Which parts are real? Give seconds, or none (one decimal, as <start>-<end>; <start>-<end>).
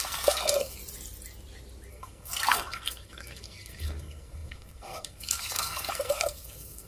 0.8-1.9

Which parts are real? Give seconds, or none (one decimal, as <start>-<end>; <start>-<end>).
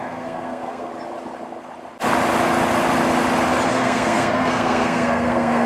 0.9-3.7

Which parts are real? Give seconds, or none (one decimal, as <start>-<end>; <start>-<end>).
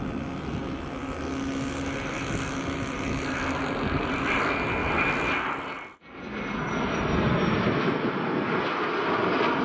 0.0-9.6